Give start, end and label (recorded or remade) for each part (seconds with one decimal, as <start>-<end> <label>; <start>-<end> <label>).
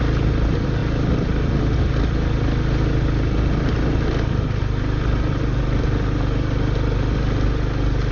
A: 0.0-8.1 recorded